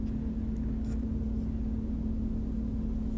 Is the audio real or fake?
real